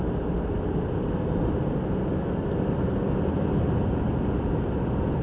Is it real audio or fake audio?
real